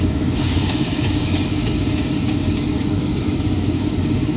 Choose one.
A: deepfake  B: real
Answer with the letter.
A